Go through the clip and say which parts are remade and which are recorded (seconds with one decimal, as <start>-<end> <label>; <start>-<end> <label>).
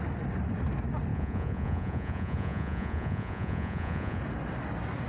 0.0-1.1 recorded; 1.1-4.2 remade; 4.2-5.1 recorded